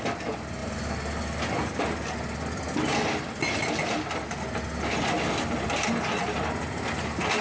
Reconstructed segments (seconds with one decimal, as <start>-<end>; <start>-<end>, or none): none